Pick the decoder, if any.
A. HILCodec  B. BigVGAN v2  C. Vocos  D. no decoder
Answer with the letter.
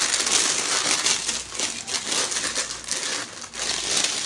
D